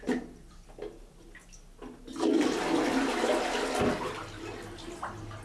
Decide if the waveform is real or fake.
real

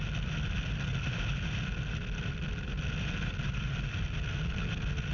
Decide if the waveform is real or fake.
real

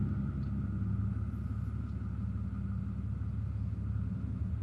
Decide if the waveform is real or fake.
real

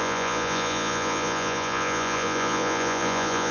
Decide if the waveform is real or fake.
fake